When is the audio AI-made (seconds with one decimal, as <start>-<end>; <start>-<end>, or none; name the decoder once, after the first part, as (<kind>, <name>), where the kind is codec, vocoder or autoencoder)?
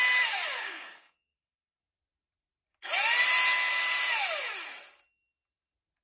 0.6-1.8 (codec, SNAC)